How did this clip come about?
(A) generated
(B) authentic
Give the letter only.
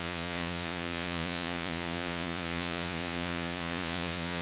A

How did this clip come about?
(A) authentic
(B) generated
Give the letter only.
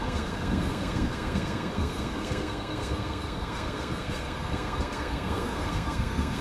B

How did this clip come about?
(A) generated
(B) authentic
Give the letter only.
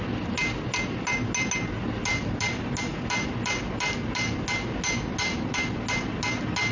B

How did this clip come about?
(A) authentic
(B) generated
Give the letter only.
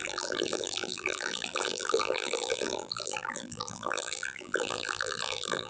B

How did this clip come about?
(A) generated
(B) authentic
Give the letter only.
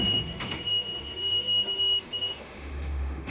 A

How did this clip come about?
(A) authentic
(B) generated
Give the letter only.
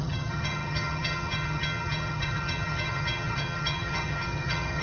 B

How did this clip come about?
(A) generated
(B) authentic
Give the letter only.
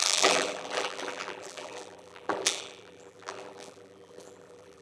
A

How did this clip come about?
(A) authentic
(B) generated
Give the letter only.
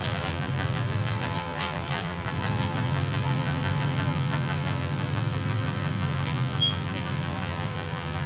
B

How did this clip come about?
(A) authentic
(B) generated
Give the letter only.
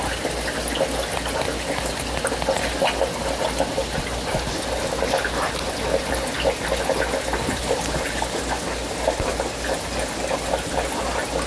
A